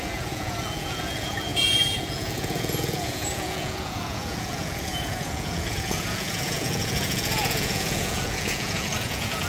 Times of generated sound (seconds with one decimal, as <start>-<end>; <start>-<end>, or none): 0.0-9.5